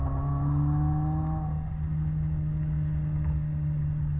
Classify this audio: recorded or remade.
recorded